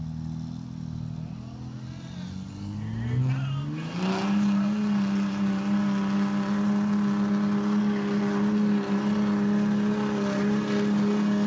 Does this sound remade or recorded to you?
recorded